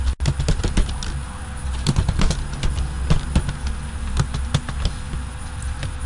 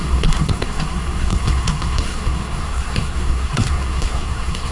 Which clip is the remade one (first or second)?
second